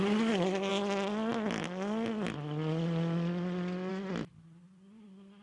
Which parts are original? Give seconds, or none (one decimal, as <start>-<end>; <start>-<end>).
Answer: 0.0-5.4